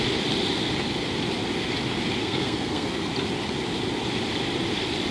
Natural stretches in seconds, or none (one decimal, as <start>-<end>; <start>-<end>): 0.0-2.2; 3.1-5.1